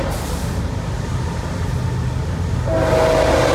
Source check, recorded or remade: recorded